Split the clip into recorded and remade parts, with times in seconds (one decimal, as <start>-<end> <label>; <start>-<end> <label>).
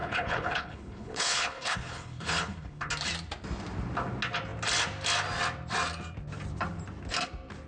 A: 0.0-2.9 remade; 2.9-7.7 recorded